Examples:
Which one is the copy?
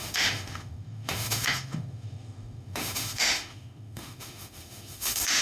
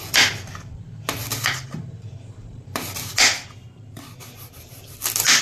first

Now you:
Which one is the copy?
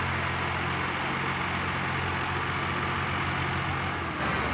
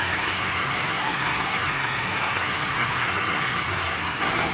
second